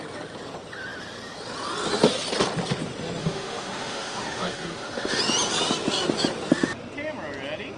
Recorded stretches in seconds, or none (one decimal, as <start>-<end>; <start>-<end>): 0.0-3.2; 5.2-7.8